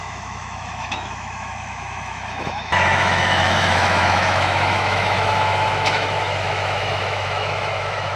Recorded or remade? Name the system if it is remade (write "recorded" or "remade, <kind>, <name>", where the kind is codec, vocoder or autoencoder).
remade, autoencoder, DAC-VAE